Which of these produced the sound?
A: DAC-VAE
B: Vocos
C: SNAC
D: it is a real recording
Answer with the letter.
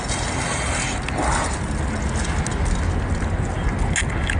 D